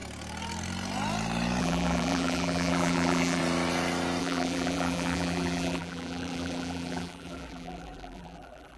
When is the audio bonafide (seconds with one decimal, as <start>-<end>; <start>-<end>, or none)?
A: 0.0-1.6; 3.4-4.2